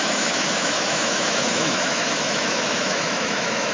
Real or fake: fake